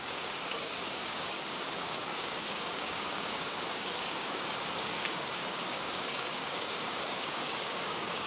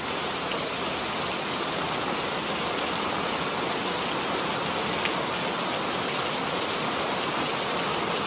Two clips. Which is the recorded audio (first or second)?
second